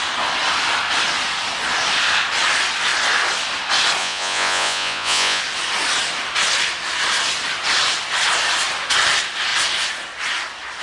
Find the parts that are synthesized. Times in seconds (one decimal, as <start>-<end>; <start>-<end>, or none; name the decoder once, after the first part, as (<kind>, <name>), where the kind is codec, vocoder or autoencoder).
4.0-5.4 (vocoder, Vocos)